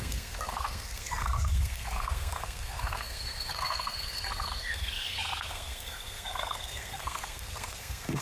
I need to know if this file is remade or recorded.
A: remade